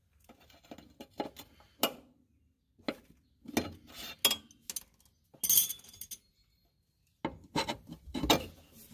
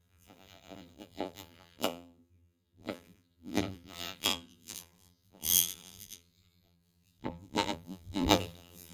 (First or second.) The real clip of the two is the first